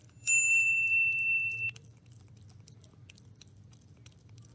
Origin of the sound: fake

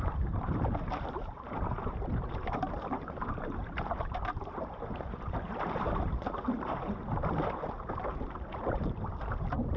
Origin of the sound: fake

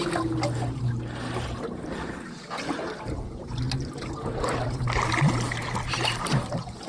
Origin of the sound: real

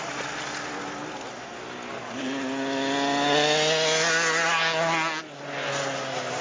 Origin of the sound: real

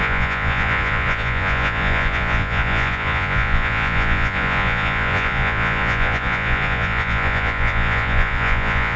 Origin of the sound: fake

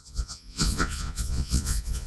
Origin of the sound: fake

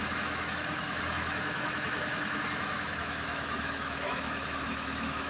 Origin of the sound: fake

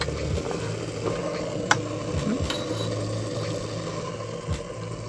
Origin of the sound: real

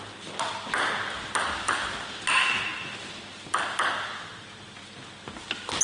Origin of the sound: real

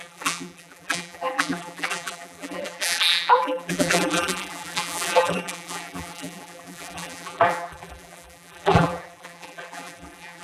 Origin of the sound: fake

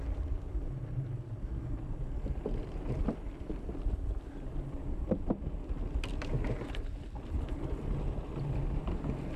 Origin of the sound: real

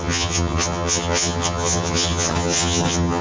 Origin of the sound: fake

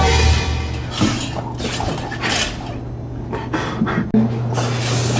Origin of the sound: real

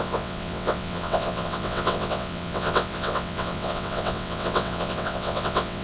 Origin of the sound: fake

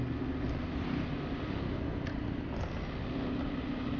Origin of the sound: real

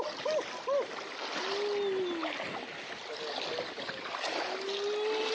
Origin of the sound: real